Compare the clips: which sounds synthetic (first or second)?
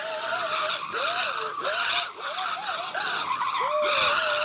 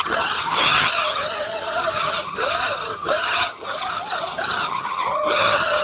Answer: second